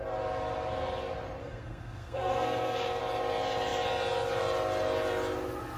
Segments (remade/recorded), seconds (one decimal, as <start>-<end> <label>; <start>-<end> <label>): 0.0-1.4 recorded; 1.4-3.0 remade; 3.0-5.8 recorded